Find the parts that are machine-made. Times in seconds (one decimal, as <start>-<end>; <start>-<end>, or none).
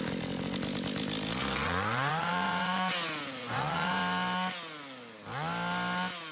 1.4-2.9; 3.4-4.0